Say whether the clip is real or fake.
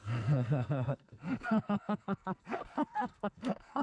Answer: fake